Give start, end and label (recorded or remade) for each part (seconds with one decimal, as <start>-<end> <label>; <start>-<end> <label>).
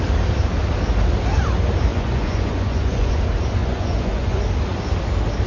0.0-1.9 recorded; 1.9-3.2 remade; 3.2-3.6 recorded; 3.6-4.4 remade; 4.4-5.5 recorded